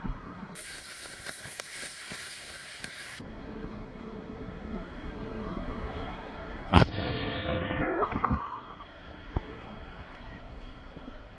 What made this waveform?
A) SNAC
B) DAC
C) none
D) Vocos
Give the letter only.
A